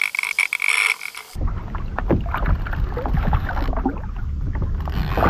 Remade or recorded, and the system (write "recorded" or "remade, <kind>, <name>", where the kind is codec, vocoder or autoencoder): recorded